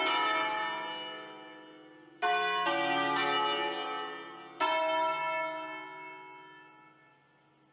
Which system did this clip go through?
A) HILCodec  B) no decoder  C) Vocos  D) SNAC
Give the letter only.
B